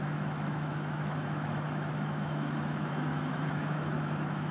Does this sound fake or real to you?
fake